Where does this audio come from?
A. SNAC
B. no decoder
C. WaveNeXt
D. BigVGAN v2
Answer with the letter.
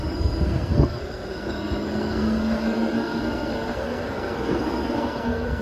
A